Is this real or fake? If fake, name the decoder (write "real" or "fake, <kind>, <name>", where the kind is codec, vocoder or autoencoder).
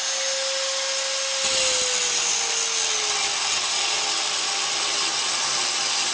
real